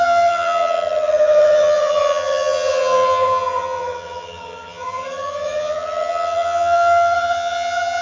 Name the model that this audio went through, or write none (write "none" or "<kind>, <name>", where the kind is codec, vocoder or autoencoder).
vocoder, HiFi-GAN